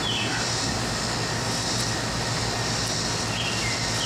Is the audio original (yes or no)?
yes